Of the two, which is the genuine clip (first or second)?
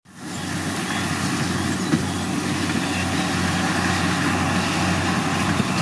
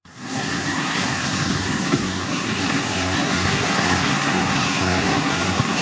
first